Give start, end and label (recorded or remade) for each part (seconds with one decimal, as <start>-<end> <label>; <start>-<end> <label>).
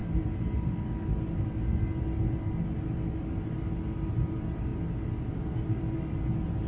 0.0-6.7 recorded